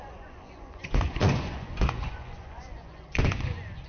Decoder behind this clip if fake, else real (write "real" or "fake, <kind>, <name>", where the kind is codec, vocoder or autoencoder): fake, vocoder, Vocos